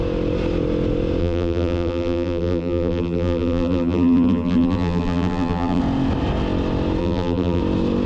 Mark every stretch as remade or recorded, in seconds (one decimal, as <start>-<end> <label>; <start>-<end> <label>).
0.0-1.2 recorded; 1.2-5.8 remade; 5.8-7.0 recorded; 7.0-7.6 remade; 7.6-8.1 recorded